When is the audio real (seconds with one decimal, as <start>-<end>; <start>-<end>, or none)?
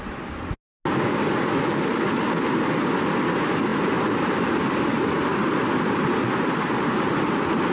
0.0-7.7